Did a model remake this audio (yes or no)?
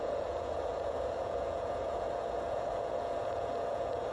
yes